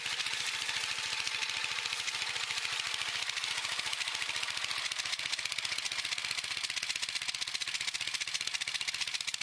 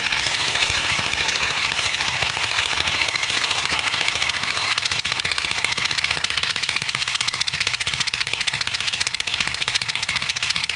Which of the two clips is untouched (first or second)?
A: first